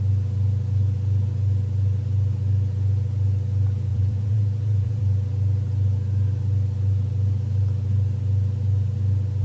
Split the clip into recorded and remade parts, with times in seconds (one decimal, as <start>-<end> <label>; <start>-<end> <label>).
0.0-3.9 recorded; 3.9-5.0 remade; 5.0-9.4 recorded